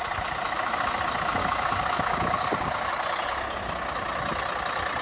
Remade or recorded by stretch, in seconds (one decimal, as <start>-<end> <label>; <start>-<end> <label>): 0.0-1.4 recorded; 1.4-2.9 remade; 2.9-5.0 recorded